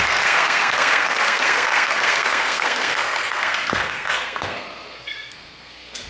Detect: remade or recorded remade